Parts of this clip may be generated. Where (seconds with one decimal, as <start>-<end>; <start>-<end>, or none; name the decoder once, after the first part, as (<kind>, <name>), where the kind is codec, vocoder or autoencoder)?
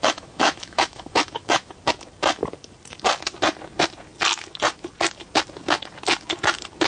0.0-1.7 (autoencoder, DAC-VAE)